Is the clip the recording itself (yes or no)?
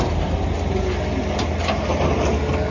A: yes